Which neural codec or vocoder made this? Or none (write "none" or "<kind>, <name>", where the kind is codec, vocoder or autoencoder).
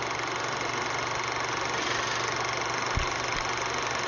none